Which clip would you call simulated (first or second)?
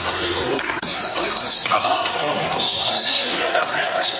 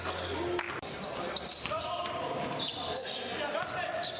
first